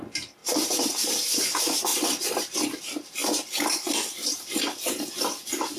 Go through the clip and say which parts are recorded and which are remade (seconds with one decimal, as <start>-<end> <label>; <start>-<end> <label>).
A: 0.0-0.4 recorded; 0.4-1.4 remade; 1.4-5.8 recorded